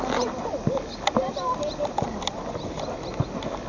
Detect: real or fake real